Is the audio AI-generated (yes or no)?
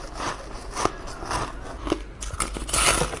no